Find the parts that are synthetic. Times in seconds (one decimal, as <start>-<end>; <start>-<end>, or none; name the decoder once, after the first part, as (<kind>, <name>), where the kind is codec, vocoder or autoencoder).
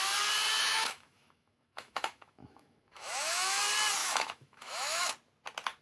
0.6-3.6 (autoencoder, DAC-VAE); 4.0-5.1